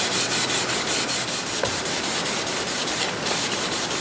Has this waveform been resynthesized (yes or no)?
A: yes